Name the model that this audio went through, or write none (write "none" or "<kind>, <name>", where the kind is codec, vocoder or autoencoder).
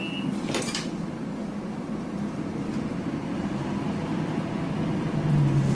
none